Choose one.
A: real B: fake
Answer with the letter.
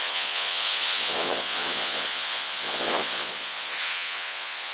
B